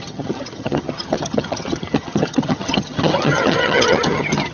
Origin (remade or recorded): remade